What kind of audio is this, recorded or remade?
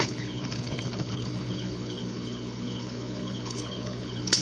remade